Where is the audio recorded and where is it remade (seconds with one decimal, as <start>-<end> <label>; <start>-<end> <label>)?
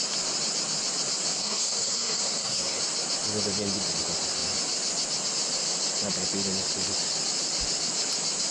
0.0-1.4 recorded; 1.4-2.8 remade; 2.8-8.5 recorded